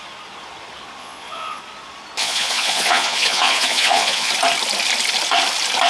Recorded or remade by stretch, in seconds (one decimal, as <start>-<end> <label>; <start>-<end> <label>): 0.0-1.0 recorded; 1.0-1.6 remade; 1.6-2.2 recorded; 2.2-4.3 remade; 4.3-5.9 recorded